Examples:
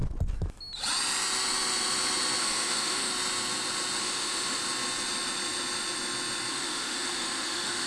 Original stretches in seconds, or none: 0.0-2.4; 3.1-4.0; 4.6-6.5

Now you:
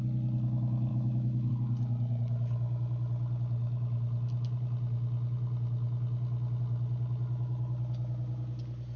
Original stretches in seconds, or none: 0.0-0.9; 1.5-9.0

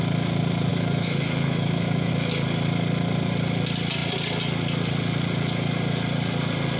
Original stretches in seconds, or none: 0.0-0.7; 2.1-6.8

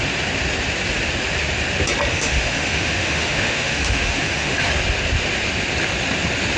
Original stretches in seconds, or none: 0.0-2.1; 4.7-6.6